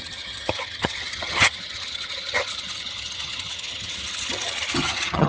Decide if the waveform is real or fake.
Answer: fake